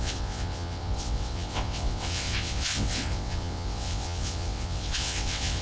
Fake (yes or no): yes